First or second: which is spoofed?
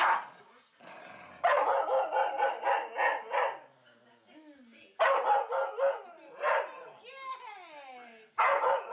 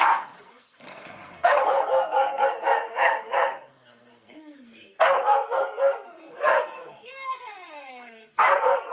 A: second